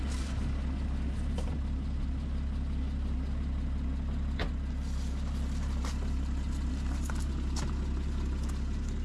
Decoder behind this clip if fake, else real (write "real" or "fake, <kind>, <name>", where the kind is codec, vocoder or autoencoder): real